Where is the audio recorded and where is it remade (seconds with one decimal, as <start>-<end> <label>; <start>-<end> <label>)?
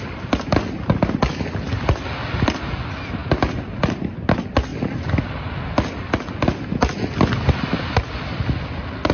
0.0-9.1 recorded